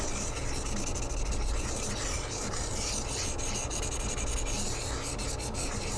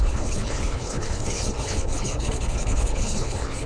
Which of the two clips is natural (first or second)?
first